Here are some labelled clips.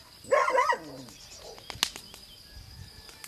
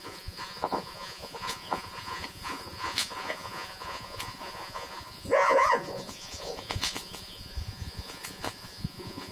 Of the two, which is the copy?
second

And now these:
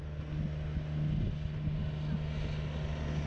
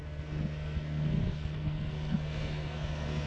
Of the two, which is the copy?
second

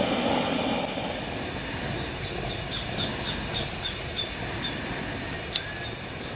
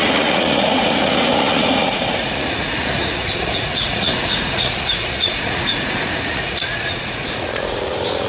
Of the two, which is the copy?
second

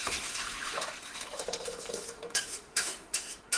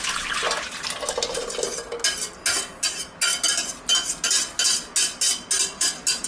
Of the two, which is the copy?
first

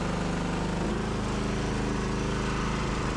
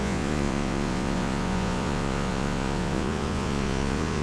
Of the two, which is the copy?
second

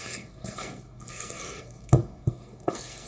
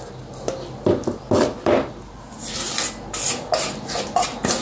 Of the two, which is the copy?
first